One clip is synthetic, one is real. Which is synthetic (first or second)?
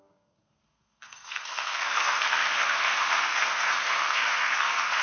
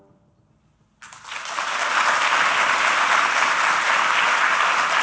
first